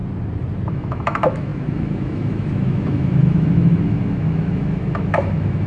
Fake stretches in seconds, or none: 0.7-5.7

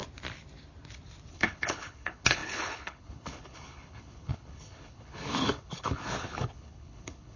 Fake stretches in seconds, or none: 1.3-7.4

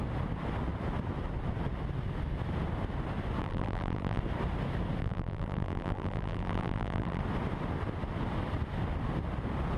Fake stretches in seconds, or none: 3.4-4.2; 5.0-7.2

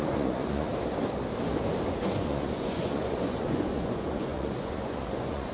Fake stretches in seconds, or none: 0.0-0.7; 1.9-5.5

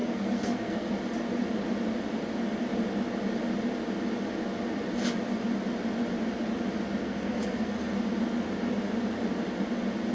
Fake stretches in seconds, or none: 0.0-0.9; 7.0-8.0

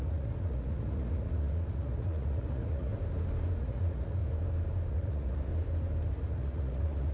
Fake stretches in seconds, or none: 0.0-2.9; 3.6-4.2; 4.9-5.5; 6.1-7.1